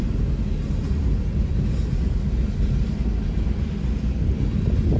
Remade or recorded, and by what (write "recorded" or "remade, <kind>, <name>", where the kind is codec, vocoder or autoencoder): recorded